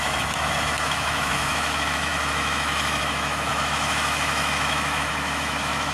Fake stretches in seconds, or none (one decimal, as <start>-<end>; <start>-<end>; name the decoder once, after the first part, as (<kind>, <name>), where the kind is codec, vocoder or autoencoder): 0.0-5.9 (autoencoder, DAC-VAE)